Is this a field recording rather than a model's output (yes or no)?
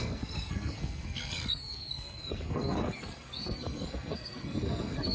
no